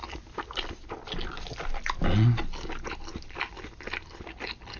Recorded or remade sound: recorded